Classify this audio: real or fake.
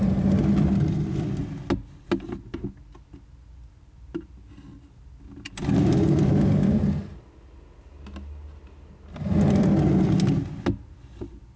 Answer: real